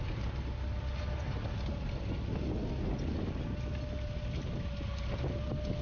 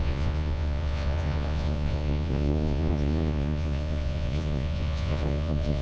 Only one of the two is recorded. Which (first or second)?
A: first